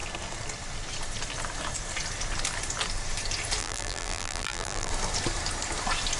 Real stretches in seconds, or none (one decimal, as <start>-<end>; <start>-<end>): 0.0-3.6; 4.9-6.2